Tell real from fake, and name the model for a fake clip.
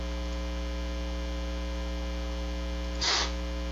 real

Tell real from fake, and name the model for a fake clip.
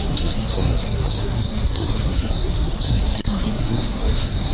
fake, codec, SNAC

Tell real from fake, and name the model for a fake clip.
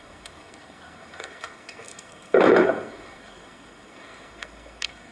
fake, codec, SNAC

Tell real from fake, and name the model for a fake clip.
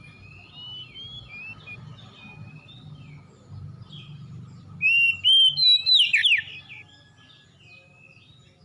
real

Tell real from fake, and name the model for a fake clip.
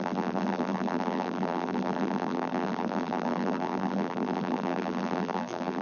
fake, vocoder, BigVGAN v2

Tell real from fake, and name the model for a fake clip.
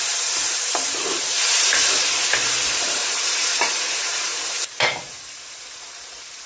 fake, vocoder, BigVGAN v2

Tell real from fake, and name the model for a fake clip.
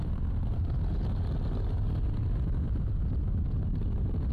real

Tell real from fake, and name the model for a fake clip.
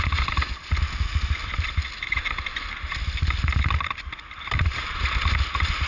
real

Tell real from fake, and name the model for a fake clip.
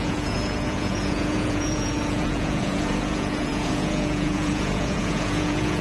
fake, vocoder, Vocos